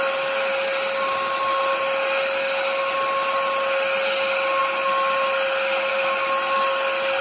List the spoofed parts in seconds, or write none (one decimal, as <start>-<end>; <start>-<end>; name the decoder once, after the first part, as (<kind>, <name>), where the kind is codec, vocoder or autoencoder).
none